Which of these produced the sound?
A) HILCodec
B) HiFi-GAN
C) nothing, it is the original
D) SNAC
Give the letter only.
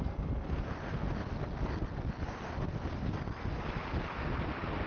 C